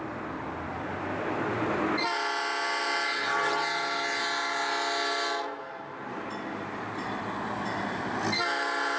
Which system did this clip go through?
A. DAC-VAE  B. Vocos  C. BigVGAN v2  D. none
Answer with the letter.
D